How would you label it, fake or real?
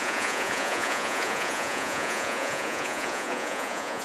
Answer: fake